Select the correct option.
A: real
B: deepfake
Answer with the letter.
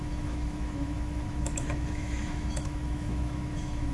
B